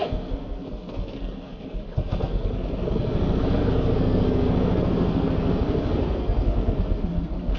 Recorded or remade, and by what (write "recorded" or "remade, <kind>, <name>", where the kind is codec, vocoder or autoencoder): remade, codec, SNAC